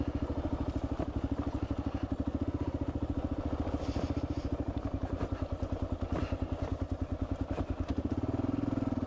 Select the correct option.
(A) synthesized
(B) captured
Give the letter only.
B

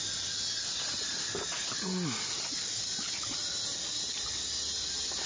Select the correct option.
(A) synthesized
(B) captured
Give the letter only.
B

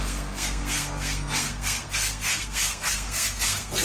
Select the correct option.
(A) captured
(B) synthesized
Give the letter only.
B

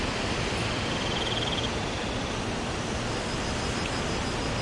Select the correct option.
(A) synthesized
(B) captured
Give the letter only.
B